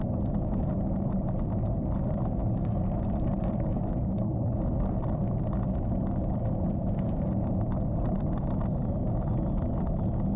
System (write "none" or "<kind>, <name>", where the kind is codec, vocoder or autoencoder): none